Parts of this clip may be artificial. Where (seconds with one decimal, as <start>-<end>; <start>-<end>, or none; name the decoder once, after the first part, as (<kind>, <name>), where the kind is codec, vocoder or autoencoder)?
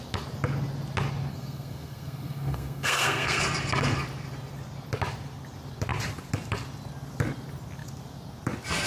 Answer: 1.3-3.4 (codec, SNAC)